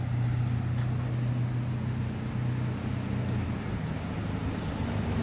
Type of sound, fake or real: real